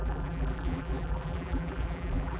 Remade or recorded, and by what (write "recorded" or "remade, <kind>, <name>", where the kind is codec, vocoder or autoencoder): remade, vocoder, BigVGAN v2